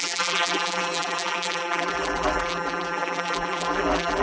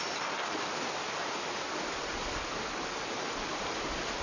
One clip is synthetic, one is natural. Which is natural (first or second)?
second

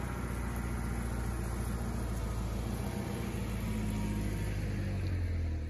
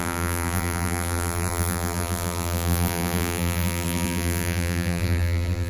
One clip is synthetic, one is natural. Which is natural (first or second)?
first